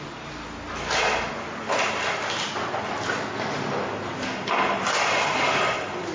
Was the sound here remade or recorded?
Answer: recorded